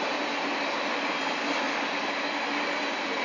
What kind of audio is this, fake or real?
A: real